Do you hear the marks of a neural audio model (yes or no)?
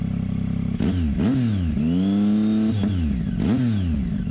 no